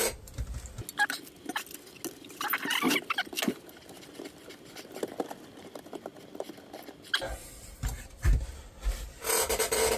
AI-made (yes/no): no